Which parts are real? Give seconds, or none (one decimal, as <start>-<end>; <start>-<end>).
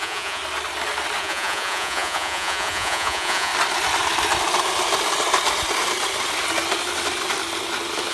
0.4-1.2; 3.5-8.1